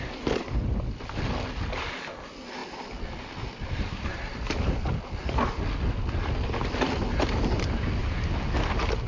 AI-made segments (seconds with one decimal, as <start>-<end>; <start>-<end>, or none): none